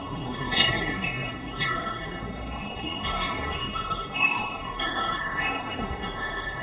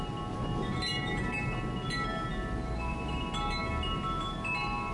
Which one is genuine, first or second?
second